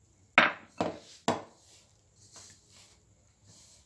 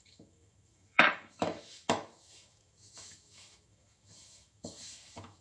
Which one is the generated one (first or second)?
second